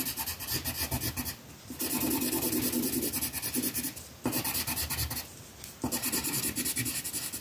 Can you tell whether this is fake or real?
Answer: real